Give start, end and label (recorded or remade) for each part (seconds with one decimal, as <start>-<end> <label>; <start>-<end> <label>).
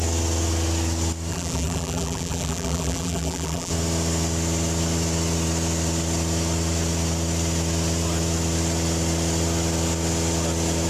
0.0-1.3 recorded; 1.3-3.7 remade; 3.7-10.9 recorded